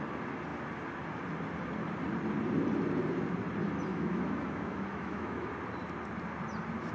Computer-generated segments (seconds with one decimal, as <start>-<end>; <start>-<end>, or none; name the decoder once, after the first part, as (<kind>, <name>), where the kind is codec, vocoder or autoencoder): 3.9-5.5 (autoencoder, DAC-VAE)